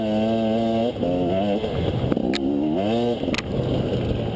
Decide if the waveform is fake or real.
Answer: real